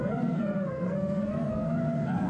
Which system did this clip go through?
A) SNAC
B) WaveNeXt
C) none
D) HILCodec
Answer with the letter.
A